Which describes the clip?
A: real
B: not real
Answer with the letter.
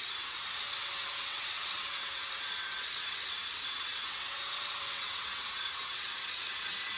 B